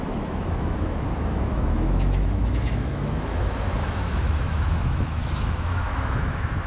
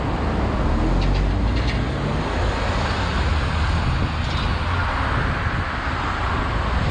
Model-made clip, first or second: first